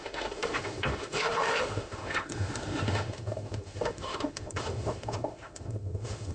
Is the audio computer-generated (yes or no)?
yes